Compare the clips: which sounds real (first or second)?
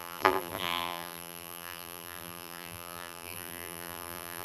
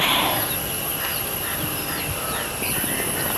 second